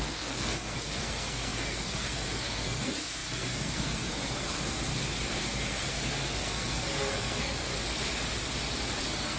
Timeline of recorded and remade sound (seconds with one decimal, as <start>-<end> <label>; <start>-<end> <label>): 0.0-4.9 remade; 4.9-5.4 recorded; 5.4-7.7 remade; 7.7-9.0 recorded; 9.0-9.4 remade